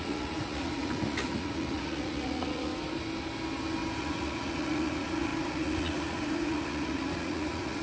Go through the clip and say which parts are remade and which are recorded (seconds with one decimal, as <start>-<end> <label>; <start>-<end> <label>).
0.0-2.7 remade; 2.7-4.0 recorded; 4.0-7.8 remade